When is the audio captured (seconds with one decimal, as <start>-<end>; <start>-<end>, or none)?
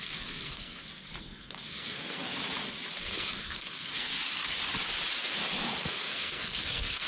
2.4-3.0; 4.1-5.9